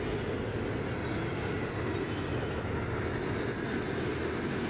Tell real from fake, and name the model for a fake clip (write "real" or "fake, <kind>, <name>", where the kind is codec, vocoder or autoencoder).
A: real